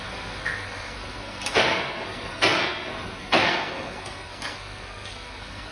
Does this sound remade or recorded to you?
remade